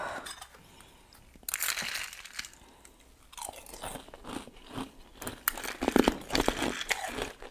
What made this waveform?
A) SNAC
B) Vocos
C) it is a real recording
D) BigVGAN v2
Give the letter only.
C